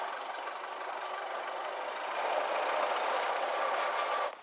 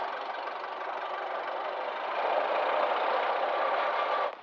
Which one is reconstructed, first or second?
second